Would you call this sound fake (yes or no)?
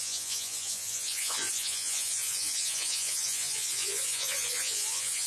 yes